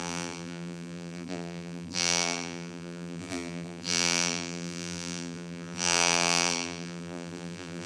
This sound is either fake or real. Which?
fake